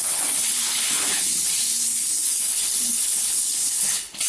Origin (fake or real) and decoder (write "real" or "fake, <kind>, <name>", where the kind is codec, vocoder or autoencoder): fake, codec, HILCodec